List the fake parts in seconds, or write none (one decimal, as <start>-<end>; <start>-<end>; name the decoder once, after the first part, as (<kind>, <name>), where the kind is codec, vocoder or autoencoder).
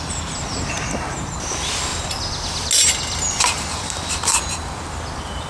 none